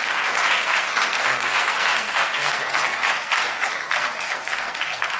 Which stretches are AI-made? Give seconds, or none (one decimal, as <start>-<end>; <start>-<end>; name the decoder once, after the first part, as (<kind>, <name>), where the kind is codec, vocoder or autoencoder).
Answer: 0.0-5.2 (codec, SNAC)